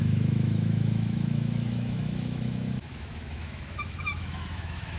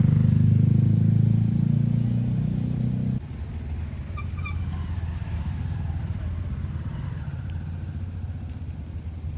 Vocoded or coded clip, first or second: first